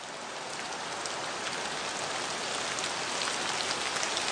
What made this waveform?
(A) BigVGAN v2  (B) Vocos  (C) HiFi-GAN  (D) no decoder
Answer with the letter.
D